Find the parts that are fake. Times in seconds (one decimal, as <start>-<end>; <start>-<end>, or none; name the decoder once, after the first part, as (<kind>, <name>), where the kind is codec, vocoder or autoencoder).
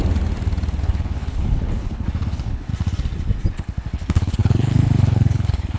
0.8-2.7 (codec, HILCodec); 3.5-5.8